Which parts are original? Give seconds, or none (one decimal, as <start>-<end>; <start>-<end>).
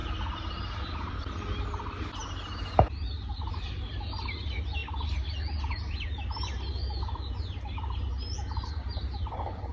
0.0-9.7